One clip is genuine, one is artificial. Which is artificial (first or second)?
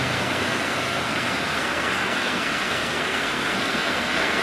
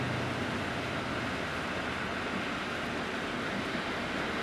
first